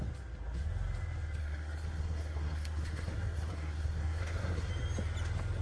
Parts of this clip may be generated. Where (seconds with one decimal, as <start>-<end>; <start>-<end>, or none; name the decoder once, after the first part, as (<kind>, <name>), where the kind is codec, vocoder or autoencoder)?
1.4-4.7 (codec, SNAC)